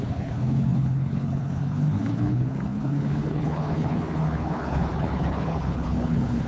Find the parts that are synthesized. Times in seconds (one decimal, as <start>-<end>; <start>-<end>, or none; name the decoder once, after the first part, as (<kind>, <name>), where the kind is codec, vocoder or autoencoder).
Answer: 0.0-6.5 (codec, HILCodec)